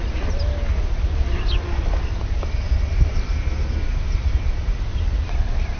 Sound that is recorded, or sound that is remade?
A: recorded